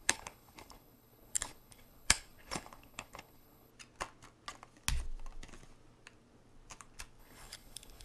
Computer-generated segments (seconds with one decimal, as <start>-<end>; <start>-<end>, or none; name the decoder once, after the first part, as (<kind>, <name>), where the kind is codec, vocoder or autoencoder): 0.0-3.7 (codec, HILCodec); 7.2-8.0